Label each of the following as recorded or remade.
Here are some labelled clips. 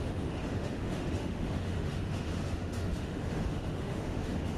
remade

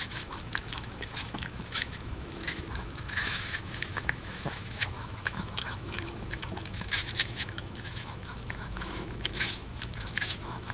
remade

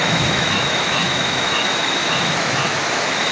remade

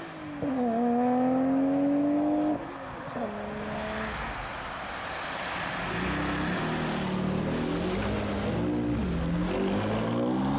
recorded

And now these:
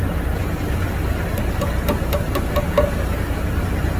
recorded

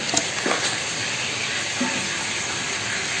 recorded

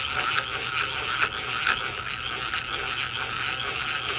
recorded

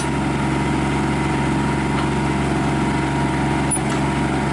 recorded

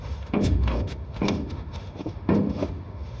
remade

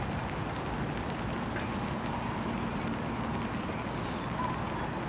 recorded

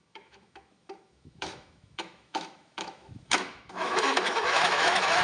remade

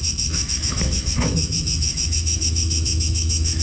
remade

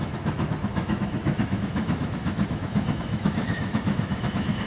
remade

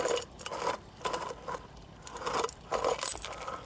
recorded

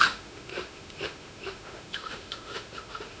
remade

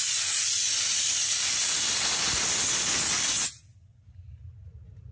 recorded